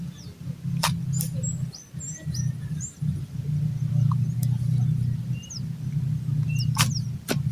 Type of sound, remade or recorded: recorded